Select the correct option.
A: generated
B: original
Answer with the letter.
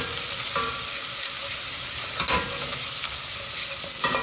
B